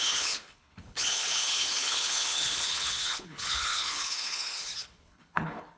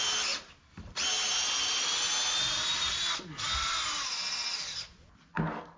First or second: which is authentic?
second